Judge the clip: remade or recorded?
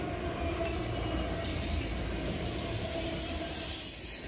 recorded